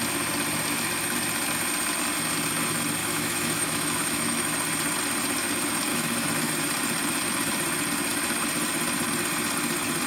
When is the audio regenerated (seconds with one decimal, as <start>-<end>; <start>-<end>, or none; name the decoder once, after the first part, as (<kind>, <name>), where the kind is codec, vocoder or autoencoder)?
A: 3.0-4.5 (autoencoder, DAC-VAE); 5.9-6.5